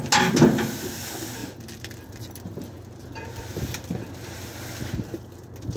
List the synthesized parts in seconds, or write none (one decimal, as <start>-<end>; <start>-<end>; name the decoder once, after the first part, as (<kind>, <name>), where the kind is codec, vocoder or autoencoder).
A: 1.4-4.0 (vocoder, BigVGAN v2)